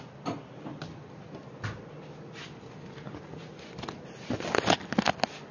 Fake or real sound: real